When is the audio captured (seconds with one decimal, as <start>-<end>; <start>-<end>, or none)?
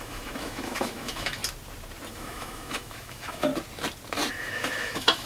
1.4-2.1; 3.5-4.3